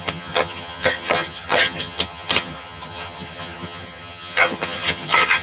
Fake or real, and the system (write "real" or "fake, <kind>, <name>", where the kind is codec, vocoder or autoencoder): fake, vocoder, HiFi-GAN